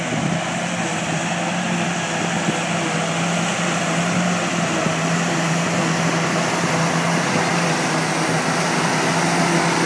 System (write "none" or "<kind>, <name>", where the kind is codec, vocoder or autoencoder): none